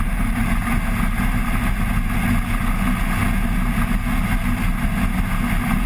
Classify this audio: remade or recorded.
recorded